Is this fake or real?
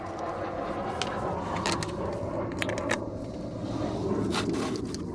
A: real